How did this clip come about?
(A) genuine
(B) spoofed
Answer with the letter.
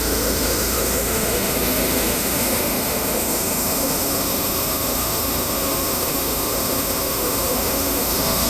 B